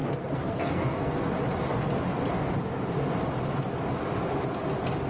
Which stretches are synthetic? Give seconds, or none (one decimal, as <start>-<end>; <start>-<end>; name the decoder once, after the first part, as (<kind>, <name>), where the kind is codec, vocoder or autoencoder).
0.0-1.2 (codec, SNAC)